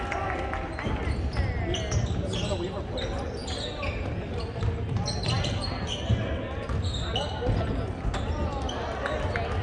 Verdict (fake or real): real